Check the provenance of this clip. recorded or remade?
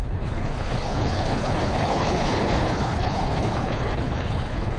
remade